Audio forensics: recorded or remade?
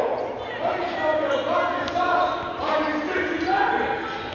recorded